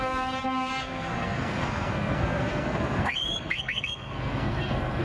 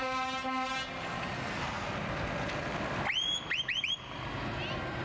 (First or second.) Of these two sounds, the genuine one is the second